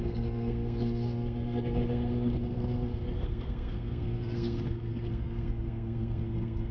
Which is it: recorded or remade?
remade